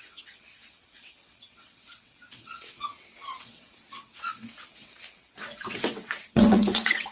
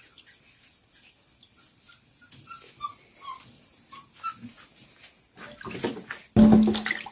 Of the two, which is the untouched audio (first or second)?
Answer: second